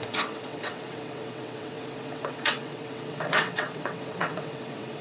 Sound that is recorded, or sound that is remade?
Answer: remade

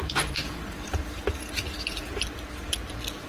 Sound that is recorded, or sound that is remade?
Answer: recorded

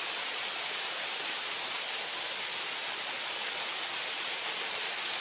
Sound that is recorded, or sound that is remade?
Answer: recorded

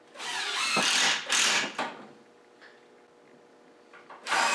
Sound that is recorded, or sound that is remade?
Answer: recorded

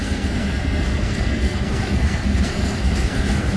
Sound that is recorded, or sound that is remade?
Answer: remade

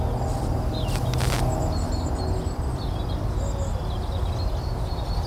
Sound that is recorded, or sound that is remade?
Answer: recorded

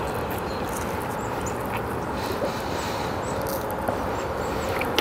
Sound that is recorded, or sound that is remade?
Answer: recorded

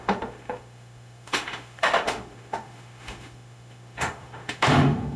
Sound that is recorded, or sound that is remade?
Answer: remade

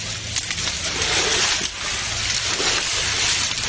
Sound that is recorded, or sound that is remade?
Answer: recorded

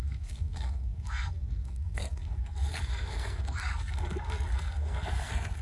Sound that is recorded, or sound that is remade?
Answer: remade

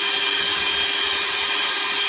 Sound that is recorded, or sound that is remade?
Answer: recorded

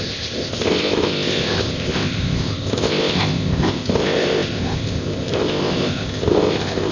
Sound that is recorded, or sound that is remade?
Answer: remade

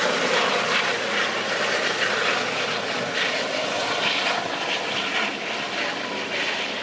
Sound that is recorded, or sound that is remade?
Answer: recorded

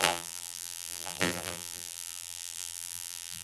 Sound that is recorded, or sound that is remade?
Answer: remade